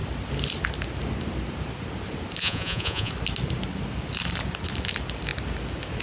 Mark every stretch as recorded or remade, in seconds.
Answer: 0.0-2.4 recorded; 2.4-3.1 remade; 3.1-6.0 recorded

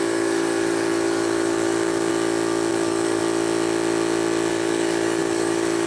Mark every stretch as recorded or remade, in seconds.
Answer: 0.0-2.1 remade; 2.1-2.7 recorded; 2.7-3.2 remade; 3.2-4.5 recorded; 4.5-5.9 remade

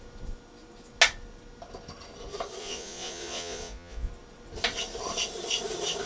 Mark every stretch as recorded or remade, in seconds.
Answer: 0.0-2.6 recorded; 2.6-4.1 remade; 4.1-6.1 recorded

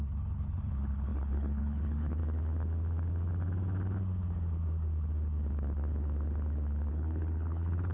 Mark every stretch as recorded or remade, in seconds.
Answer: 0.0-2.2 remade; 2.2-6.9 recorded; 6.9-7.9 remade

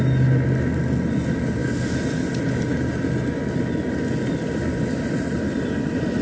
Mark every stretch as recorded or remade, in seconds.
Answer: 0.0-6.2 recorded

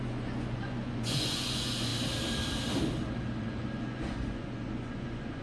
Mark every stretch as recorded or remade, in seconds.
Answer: 0.0-1.9 remade; 1.9-3.4 recorded; 3.4-5.4 remade

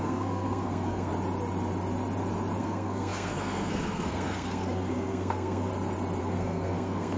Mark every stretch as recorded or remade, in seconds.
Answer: 0.0-1.1 remade; 1.1-2.6 recorded; 2.6-5.7 remade; 5.7-6.2 recorded; 6.2-7.2 remade